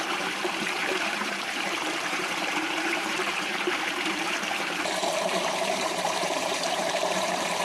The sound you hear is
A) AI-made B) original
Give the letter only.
A